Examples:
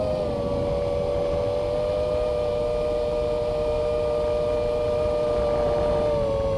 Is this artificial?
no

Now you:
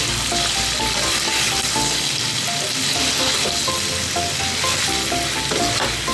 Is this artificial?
no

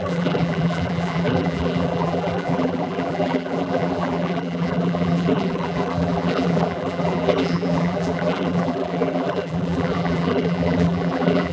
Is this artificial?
yes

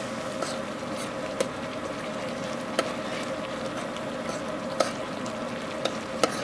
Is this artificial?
no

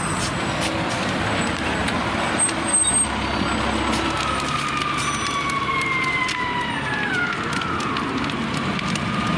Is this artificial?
no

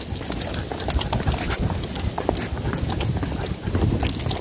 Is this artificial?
no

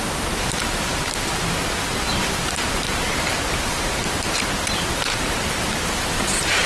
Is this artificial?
yes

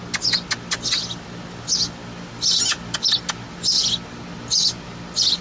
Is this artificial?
no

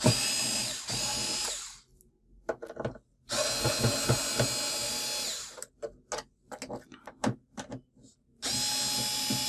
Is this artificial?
no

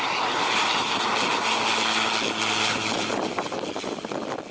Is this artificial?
no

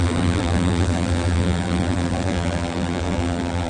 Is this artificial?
yes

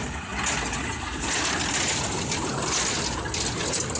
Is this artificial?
no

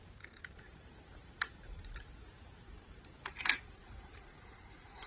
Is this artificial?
yes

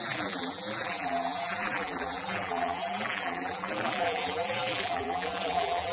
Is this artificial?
yes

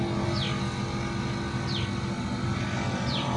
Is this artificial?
no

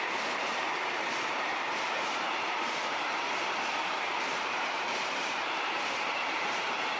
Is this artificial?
yes